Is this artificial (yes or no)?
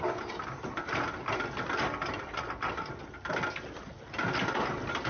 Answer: no